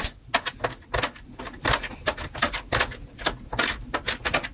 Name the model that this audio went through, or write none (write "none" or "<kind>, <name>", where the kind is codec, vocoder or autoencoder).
none